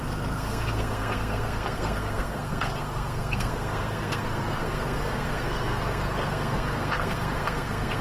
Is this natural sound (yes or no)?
no